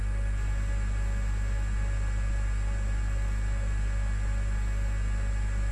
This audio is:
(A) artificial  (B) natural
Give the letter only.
B